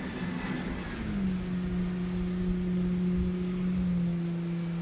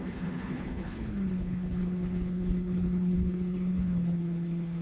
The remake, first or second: second